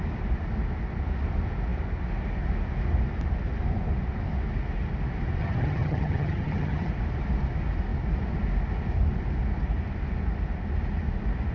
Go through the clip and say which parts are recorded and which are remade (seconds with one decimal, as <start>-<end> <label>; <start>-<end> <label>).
0.0-5.4 recorded; 5.4-6.9 remade; 6.9-11.5 recorded

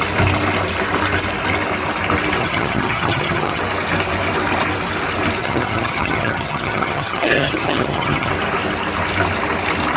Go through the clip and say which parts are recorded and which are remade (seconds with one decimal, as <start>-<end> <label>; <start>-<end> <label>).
0.0-2.4 recorded; 2.4-3.6 remade; 3.6-5.4 recorded; 5.4-8.3 remade; 8.3-10.0 recorded

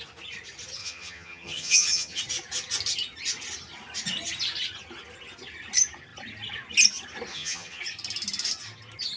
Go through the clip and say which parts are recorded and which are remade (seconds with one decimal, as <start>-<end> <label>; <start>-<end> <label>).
0.0-0.8 recorded; 0.8-2.2 remade; 2.2-7.3 recorded; 7.3-7.8 remade; 7.8-9.2 recorded

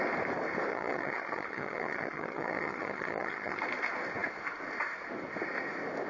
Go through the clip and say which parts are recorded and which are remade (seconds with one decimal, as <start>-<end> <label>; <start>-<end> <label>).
0.0-0.7 recorded; 0.7-3.6 remade; 3.6-6.1 recorded

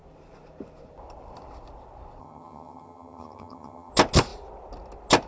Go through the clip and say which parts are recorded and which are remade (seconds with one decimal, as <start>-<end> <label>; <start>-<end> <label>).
0.0-2.2 recorded; 2.2-3.9 remade; 3.9-5.3 recorded

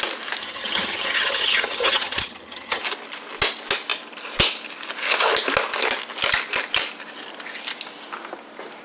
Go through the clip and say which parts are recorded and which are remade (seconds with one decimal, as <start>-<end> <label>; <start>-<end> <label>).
0.0-0.4 recorded; 0.4-2.8 remade; 2.8-8.8 recorded